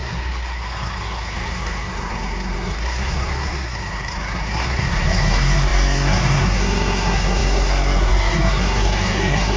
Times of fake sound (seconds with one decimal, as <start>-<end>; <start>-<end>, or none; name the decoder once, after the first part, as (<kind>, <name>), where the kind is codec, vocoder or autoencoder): 0.0-9.6 (codec, SNAC)